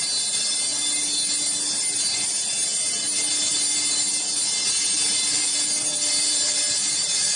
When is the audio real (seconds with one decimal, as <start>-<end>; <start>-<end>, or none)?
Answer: 0.0-7.4